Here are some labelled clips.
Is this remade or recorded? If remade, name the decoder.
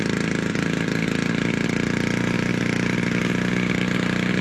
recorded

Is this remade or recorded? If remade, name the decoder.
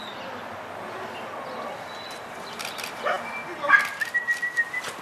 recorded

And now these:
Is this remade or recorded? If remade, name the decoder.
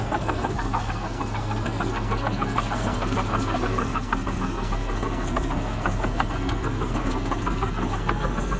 remade, codec, SNAC